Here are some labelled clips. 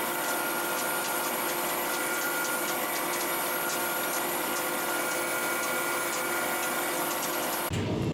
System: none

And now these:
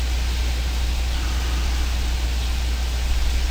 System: none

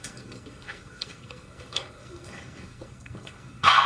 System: codec, SNAC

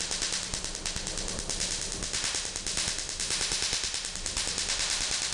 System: none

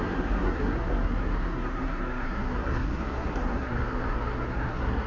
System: codec, SNAC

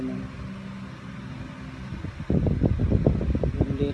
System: none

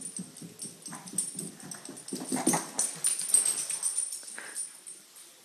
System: none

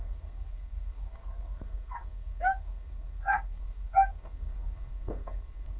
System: codec, SNAC